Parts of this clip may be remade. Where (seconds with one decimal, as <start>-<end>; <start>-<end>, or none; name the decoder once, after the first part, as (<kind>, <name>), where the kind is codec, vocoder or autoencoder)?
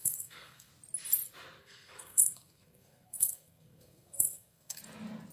0.0-0.7 (codec, SNAC); 1.6-4.8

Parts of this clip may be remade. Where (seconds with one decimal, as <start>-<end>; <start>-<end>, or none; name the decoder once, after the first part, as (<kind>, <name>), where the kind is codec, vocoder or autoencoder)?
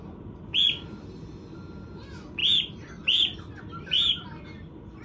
none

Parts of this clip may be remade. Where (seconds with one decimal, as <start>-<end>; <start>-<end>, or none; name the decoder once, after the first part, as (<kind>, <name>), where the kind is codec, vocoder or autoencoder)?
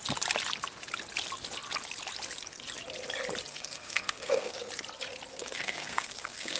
3.5-4.7 (codec, SNAC); 5.3-6.6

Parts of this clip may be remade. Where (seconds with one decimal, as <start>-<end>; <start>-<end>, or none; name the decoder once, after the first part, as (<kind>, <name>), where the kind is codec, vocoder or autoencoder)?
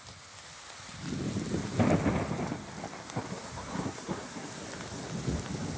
3.3-4.6 (codec, SNAC)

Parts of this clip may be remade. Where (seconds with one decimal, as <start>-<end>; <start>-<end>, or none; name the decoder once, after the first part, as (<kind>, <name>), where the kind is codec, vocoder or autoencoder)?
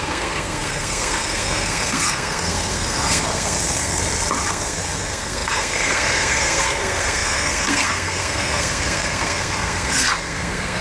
0.0-4.0 (codec, SNAC); 4.5-10.8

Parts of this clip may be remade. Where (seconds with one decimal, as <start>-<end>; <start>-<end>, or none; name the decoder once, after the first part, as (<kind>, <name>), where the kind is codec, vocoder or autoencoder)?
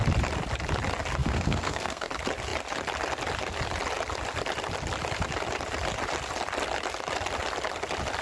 1.2-2.1 (codec, SNAC)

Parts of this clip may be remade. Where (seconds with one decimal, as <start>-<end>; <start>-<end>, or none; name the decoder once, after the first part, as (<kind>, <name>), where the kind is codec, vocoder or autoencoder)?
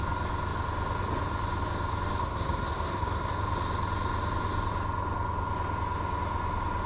2.2-3.3 (codec, SNAC)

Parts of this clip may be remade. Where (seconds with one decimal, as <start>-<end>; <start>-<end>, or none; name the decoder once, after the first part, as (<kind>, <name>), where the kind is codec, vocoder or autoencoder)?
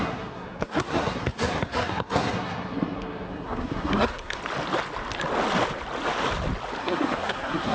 0.0-4.4 (codec, SNAC); 6.8-7.7